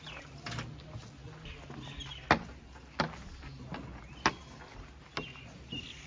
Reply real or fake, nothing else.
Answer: real